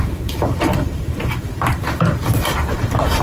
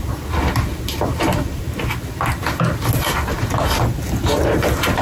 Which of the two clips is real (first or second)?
second